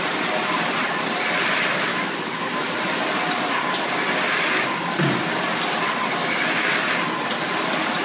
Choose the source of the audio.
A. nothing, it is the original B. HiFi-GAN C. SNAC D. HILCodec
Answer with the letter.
A